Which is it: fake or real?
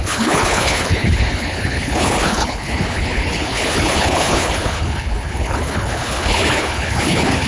fake